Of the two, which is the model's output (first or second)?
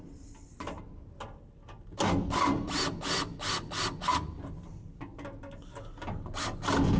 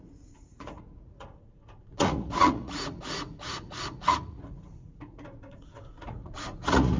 second